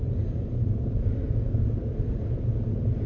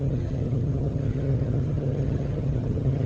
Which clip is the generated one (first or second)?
second